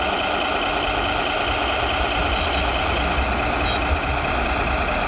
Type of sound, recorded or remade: recorded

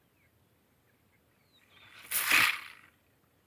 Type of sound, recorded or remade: recorded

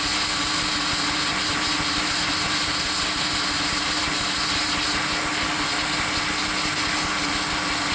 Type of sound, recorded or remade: recorded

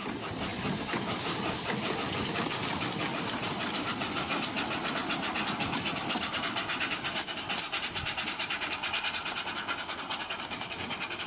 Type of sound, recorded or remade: recorded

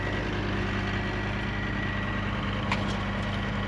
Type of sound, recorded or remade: recorded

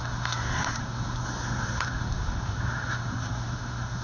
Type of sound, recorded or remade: remade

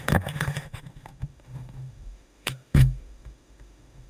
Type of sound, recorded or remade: remade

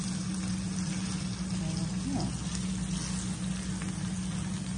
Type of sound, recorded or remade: recorded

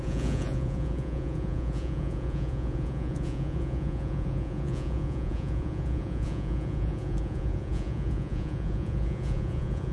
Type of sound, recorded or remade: remade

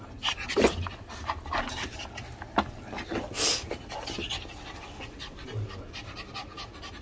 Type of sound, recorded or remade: recorded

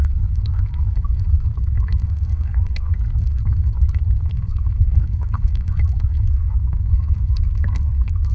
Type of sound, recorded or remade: remade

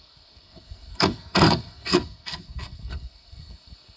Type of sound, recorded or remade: remade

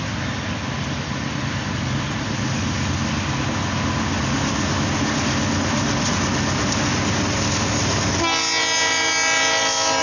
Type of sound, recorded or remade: recorded